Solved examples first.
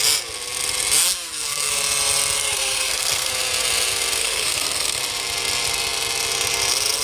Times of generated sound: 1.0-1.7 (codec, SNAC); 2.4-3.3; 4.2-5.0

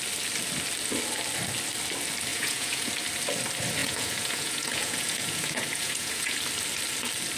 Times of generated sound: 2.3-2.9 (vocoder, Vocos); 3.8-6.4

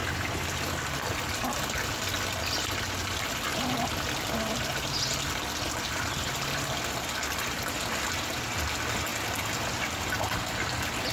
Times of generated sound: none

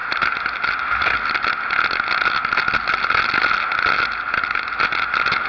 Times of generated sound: none